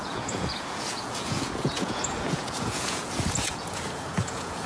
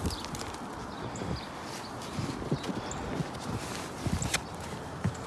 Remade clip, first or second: first